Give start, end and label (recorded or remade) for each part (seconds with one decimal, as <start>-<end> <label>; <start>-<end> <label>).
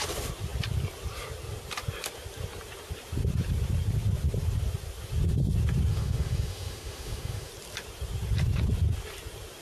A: 0.0-5.9 recorded; 5.9-7.5 remade; 7.5-9.6 recorded